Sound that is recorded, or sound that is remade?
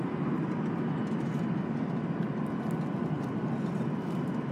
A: recorded